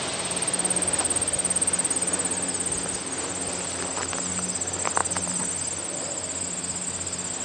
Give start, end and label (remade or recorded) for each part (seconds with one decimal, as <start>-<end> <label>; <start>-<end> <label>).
0.0-7.4 recorded

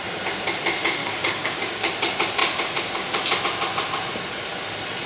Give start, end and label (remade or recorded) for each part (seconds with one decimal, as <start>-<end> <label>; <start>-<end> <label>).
0.0-1.0 recorded; 1.0-1.9 remade; 1.9-5.1 recorded

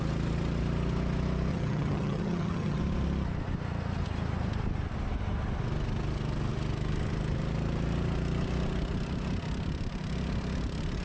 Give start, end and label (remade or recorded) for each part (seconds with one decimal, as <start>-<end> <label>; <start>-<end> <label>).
0.0-1.5 recorded; 1.5-2.8 remade; 2.8-11.0 recorded

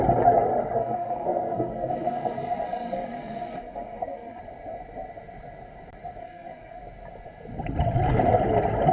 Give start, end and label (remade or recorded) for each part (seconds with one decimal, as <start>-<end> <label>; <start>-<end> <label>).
0.0-0.8 recorded; 0.8-4.4 remade; 4.4-6.2 recorded; 6.2-6.8 remade; 6.8-8.9 recorded